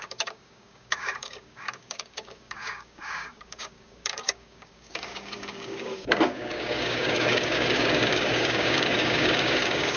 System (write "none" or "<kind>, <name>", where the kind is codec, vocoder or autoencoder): codec, DAC